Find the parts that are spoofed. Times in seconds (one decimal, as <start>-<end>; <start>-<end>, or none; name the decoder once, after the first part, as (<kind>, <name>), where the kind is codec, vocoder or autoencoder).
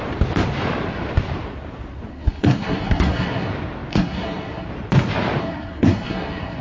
2.1-3.5 (codec, SNAC); 3.9-4.7; 5.4-6.6